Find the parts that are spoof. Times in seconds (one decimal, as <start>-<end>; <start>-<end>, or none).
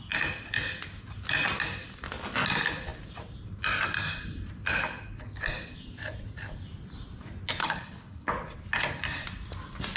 7.6-8.3